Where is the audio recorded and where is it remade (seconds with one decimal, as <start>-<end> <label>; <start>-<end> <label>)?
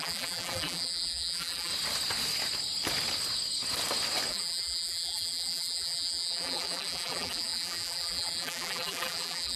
0.0-1.7 remade; 1.7-4.3 recorded; 4.3-9.6 remade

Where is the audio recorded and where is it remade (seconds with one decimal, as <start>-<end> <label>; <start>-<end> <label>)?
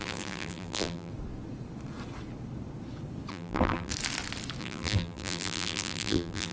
0.0-1.1 remade; 1.1-3.3 recorded; 3.3-3.9 remade; 3.9-4.6 recorded; 4.6-6.5 remade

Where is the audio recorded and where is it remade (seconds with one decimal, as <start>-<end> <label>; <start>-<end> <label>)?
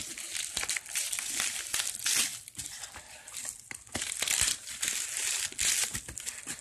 0.0-6.6 recorded